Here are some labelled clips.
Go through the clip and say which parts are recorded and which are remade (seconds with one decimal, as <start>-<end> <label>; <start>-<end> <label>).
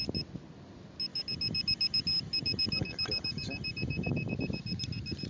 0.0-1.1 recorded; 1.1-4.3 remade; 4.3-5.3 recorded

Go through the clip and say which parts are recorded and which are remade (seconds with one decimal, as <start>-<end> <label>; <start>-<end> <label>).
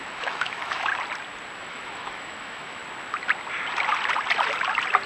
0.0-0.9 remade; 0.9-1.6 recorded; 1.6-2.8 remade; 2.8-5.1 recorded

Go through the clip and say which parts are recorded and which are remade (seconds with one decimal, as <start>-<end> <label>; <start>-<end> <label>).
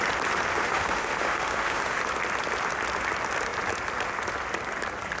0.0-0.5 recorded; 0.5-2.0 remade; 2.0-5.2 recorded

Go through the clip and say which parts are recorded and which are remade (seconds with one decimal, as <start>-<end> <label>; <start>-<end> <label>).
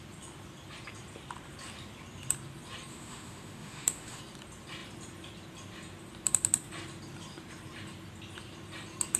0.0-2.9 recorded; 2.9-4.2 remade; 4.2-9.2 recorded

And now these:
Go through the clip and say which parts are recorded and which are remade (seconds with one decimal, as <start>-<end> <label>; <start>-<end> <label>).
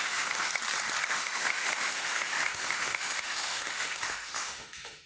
0.0-0.5 remade; 0.5-1.1 recorded; 1.1-5.1 remade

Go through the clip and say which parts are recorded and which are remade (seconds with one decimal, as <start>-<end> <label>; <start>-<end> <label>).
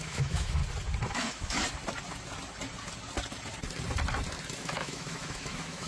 0.0-0.6 remade; 0.6-1.1 recorded; 1.1-1.6 remade; 1.6-4.6 recorded; 4.6-5.9 remade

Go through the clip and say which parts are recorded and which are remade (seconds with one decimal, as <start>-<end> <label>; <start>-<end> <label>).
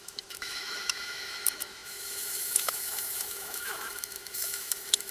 0.0-5.1 remade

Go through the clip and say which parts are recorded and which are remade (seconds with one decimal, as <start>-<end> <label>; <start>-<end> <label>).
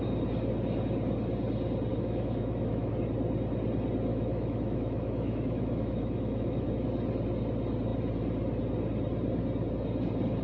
0.0-1.9 recorded; 1.9-2.9 remade; 2.9-4.1 recorded; 4.1-6.7 remade; 6.7-10.4 recorded